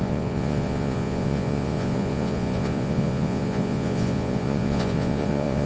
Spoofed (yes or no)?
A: yes